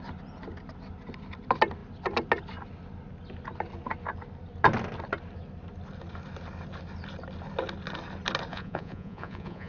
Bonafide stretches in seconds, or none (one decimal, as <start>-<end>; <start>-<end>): 0.0-8.5